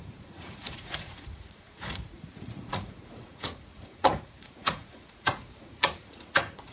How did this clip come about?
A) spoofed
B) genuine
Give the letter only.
A